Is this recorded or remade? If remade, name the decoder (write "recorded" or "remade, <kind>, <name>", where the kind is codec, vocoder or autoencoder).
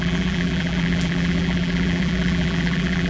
remade, vocoder, BigVGAN v2